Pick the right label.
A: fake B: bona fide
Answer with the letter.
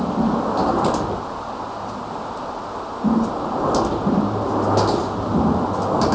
B